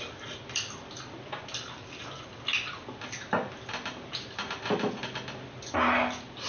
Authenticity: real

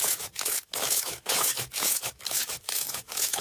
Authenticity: fake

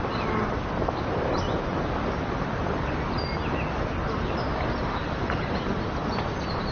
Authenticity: real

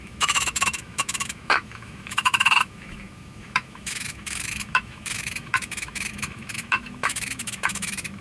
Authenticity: fake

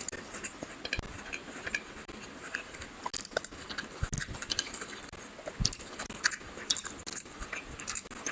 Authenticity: real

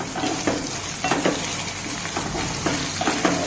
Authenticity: real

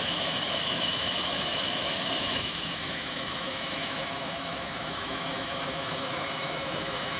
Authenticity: fake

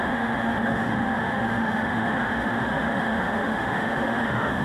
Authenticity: fake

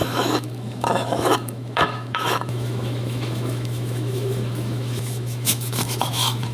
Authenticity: fake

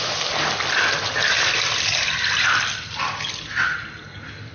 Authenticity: real